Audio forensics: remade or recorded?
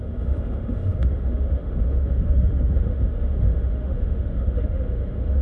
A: remade